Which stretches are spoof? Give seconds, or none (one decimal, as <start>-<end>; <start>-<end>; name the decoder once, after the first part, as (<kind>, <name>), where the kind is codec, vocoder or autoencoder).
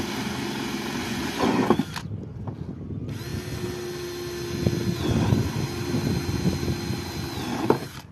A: 1.0-1.7 (vocoder, Vocos)